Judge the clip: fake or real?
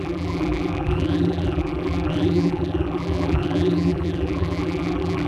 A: fake